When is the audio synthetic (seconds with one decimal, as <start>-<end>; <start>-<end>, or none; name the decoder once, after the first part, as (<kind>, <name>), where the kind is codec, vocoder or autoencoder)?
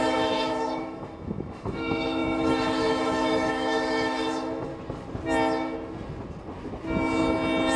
0.0-4.7 (autoencoder, DAC-VAE)